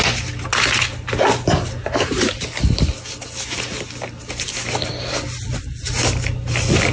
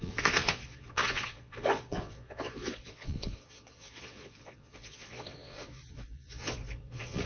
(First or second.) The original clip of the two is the first